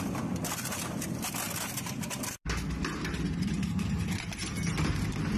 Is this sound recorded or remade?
recorded